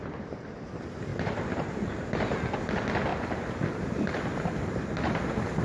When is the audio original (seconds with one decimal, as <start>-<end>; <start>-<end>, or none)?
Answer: 0.0-1.1; 1.9-3.1; 3.8-5.6